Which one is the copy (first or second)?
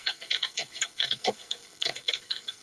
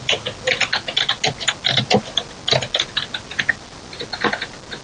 first